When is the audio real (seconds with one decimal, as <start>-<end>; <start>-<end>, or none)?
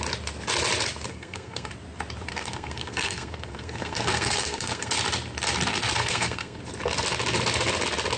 0.0-1.1; 1.7-2.3; 4.9-6.0; 6.6-8.2